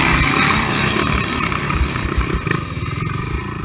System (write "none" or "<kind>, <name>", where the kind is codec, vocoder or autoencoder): vocoder, BigVGAN v2